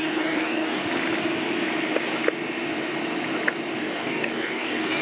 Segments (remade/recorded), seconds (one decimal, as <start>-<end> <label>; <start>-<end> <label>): 0.0-0.8 remade; 0.8-3.8 recorded; 3.8-5.0 remade